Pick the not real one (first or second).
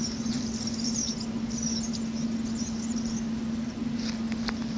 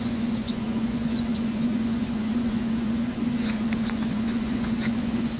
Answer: second